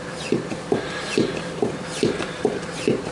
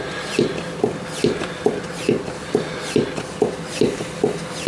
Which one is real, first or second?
second